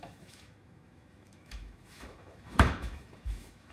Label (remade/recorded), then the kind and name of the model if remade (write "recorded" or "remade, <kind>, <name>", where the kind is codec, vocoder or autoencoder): remade, autoencoder, DAC-VAE